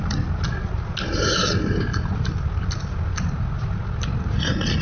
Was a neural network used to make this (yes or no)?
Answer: no